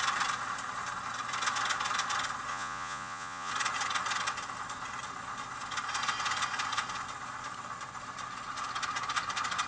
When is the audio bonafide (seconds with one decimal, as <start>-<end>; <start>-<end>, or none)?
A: 0.0-2.5; 3.5-9.7